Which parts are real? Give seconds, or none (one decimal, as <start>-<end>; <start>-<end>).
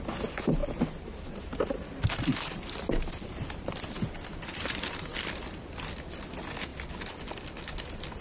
0.0-0.6; 5.0-8.2